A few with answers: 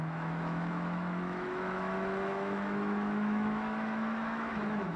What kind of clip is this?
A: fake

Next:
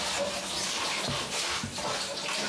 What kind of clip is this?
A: real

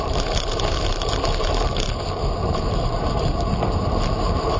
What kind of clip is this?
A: fake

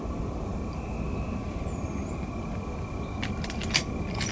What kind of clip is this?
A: real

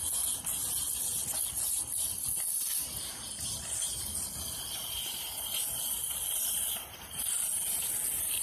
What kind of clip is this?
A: real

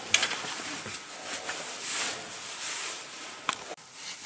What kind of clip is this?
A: real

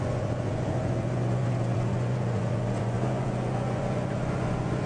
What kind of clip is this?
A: fake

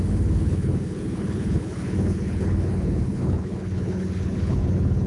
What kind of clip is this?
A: fake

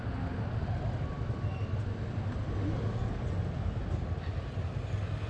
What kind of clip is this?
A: real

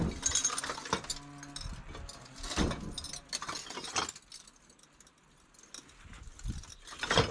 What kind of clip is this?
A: real